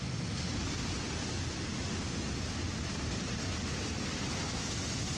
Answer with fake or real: real